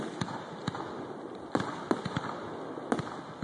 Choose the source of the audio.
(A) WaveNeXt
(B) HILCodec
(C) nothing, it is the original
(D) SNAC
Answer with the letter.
C